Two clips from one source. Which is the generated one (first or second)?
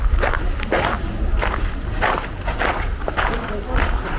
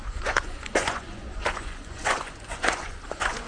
second